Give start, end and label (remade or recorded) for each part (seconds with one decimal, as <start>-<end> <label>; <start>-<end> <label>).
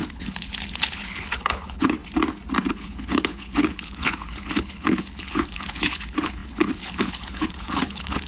0.0-2.0 remade; 2.0-2.7 recorded; 2.7-8.3 remade